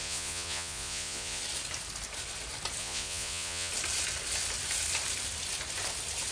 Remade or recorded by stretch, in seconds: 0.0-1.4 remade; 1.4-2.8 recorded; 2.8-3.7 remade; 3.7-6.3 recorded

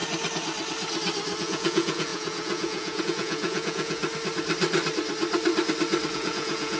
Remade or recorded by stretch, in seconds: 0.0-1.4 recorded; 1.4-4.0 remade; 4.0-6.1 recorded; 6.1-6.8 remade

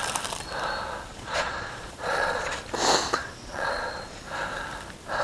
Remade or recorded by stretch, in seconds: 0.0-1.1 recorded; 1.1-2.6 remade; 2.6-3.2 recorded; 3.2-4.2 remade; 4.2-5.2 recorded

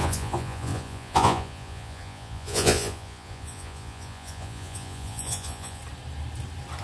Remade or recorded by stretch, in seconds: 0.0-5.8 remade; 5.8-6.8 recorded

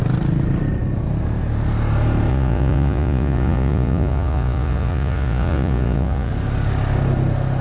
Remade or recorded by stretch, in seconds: 0.0-2.3 recorded; 2.3-6.3 remade; 6.3-7.6 recorded